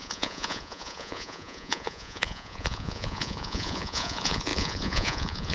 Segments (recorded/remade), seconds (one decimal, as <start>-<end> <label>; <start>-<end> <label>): 0.0-5.5 remade